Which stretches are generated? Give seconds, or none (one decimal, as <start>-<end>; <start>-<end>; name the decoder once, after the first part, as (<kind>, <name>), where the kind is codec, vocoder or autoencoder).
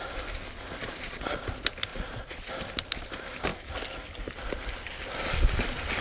0.8-1.4 (vocoder, Vocos); 1.9-2.5